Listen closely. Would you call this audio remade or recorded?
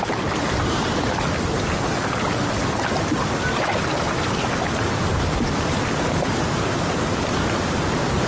recorded